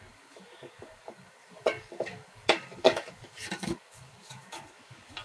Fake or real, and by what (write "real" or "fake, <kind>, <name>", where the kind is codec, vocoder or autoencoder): fake, codec, DAC